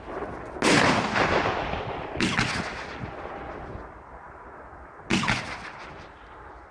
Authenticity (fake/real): real